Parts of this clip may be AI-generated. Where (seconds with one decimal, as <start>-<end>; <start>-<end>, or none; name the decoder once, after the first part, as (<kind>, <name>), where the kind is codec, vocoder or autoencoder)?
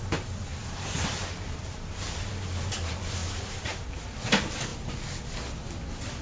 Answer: 0.5-2.1 (vocoder, BigVGAN v2); 3.2-4.0